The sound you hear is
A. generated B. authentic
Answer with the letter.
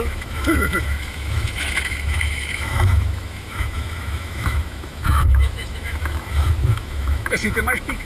A